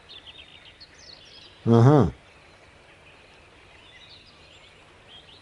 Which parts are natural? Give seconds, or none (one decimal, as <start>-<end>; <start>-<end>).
0.0-5.4